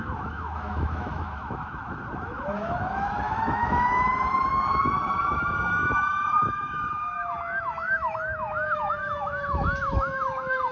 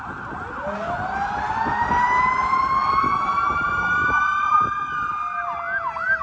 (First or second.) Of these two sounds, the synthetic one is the first